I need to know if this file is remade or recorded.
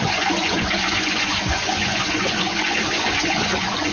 remade